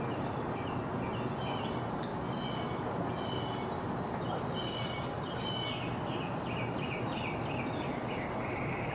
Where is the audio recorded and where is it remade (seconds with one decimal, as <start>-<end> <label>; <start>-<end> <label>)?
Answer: 0.0-8.9 recorded